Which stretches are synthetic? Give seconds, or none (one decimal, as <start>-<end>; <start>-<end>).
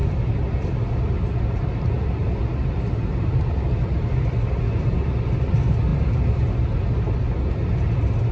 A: none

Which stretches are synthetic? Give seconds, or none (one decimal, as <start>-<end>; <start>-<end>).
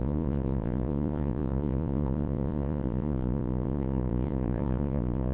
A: 0.0-5.3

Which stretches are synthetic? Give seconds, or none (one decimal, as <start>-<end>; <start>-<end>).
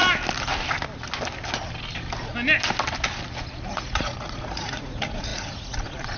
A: 3.7-6.2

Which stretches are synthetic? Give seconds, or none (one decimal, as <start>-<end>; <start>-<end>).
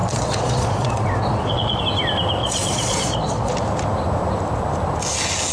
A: 0.0-1.8; 2.4-3.5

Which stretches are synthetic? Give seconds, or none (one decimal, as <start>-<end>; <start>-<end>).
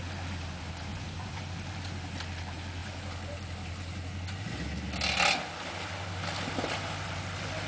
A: 0.9-1.4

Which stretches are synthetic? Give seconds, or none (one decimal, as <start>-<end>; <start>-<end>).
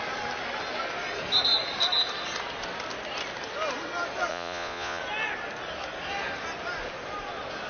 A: 4.3-5.0